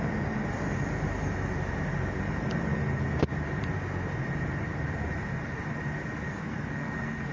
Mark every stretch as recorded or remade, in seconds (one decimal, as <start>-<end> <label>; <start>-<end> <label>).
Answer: 0.0-6.3 recorded; 6.3-7.3 remade